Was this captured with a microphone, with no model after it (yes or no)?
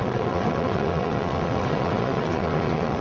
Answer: no